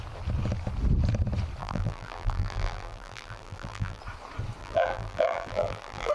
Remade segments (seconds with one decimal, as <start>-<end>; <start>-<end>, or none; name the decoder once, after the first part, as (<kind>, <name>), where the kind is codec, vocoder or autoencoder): 1.6-4.0 (vocoder, BigVGAN v2); 4.6-6.1

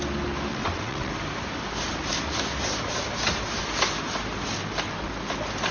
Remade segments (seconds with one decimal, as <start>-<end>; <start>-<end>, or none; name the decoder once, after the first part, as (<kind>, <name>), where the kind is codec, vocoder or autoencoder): 0.5-1.1 (vocoder, WaveNeXt)

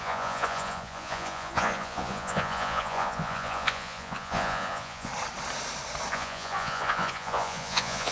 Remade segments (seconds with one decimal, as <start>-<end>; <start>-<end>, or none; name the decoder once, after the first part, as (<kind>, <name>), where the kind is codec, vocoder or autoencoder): 0.0-5.1 (vocoder, Vocos); 6.1-8.1

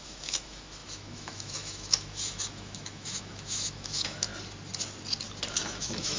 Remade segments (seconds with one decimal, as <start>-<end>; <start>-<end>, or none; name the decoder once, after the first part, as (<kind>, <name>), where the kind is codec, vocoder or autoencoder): 0.0-4.3 (autoencoder, DAC-VAE); 5.5-6.2

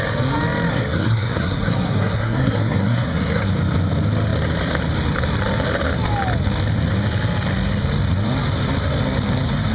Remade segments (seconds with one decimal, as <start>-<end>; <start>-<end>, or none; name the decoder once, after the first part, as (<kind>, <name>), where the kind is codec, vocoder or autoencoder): 0.7-3.5 (codec, SNAC)

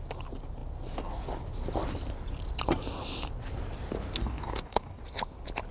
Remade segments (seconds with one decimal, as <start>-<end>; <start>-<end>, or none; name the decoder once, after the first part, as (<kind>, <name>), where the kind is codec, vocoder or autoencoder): 4.2-5.0 (codec, DAC)

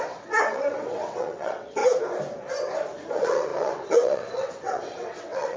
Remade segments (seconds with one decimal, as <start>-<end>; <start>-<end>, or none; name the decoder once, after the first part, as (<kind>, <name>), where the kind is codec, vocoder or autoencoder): 0.0-1.8 (vocoder, WaveNeXt); 3.1-5.6

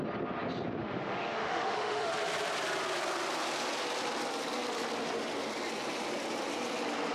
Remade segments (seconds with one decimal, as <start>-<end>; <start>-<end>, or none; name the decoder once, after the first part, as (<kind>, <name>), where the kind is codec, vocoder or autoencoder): 0.8-2.1 (autoencoder, DAC-VAE)